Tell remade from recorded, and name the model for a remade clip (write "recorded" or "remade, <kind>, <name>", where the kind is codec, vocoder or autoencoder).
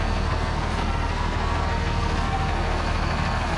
remade, codec, SNAC